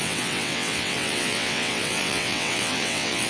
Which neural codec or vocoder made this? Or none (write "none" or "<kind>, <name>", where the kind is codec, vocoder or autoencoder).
vocoder, WaveNeXt